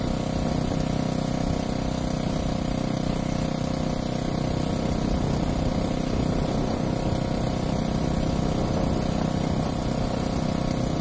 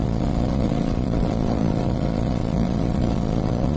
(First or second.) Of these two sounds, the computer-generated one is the second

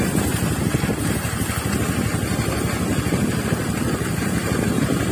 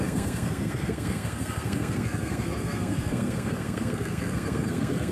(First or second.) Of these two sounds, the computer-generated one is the second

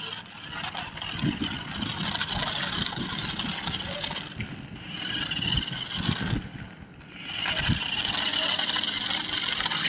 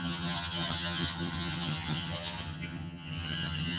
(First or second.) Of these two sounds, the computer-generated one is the second